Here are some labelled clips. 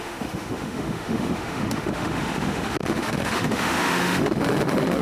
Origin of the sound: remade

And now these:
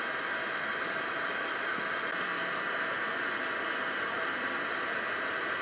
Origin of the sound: recorded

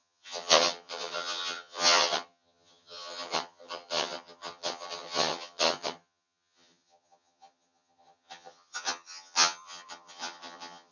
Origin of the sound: remade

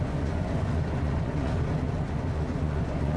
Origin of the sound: remade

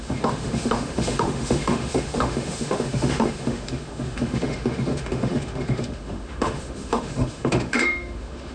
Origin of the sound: remade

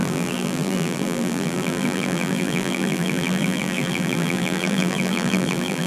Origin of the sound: remade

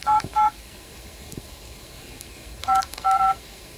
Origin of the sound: remade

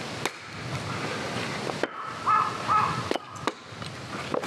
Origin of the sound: recorded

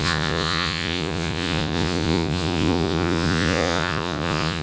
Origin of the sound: remade